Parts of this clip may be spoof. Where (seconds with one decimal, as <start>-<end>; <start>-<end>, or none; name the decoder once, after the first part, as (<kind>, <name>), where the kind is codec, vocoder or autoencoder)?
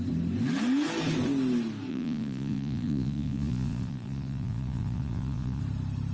1.9-5.6 (vocoder, Vocos)